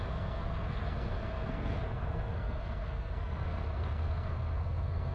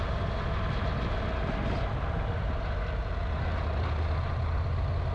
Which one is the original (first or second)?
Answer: second